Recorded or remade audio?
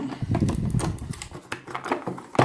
recorded